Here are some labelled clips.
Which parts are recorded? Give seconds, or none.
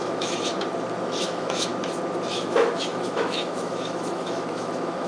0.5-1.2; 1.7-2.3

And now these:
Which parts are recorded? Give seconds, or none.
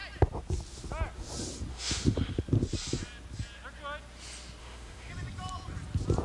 0.0-1.7; 2.4-4.6; 5.1-6.2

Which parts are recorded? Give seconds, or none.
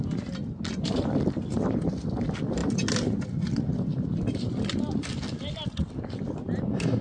0.0-7.0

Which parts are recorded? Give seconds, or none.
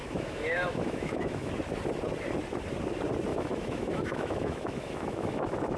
1.5-3.3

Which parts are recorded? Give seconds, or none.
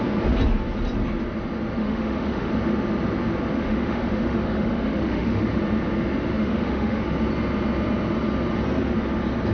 0.0-1.8; 2.5-3.5; 5.6-6.4; 7.0-9.5